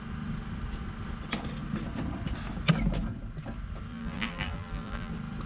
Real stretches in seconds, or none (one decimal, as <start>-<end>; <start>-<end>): 0.0-3.9; 5.1-5.5